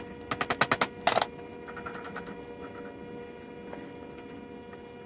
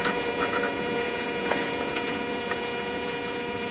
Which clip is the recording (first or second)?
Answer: first